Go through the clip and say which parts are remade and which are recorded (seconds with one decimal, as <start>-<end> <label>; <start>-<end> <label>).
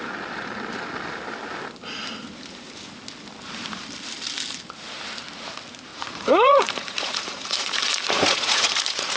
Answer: 0.0-5.9 recorded; 5.9-9.2 remade